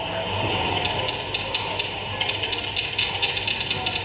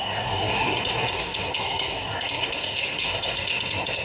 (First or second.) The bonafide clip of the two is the first